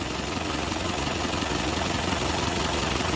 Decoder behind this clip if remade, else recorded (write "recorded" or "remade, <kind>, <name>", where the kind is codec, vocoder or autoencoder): remade, vocoder, Vocos